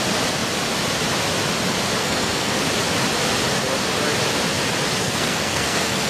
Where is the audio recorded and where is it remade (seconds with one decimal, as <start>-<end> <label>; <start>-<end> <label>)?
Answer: 0.0-2.0 recorded; 2.0-2.7 remade; 2.7-5.0 recorded; 5.0-6.1 remade